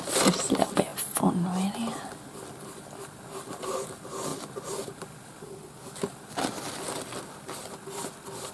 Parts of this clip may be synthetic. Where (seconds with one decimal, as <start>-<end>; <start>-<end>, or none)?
none